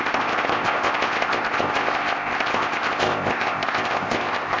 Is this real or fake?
fake